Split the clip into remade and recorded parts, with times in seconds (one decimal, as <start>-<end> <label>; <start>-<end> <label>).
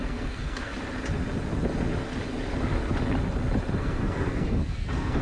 0.0-0.7 remade; 0.7-3.8 recorded; 3.8-5.2 remade